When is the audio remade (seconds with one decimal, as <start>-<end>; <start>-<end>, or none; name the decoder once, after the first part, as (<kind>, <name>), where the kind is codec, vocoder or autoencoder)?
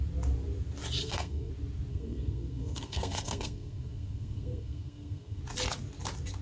1.0-1.5 (codec, SNAC); 1.9-5.4